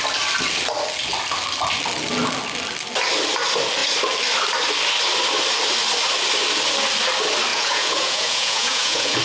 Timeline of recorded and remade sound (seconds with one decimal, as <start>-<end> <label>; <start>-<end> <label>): 0.0-7.5 recorded; 7.5-9.2 remade